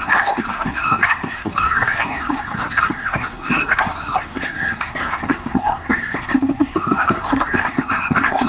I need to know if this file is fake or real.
fake